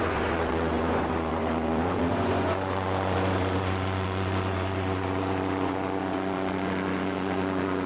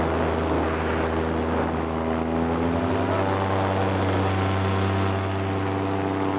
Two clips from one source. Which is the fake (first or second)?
first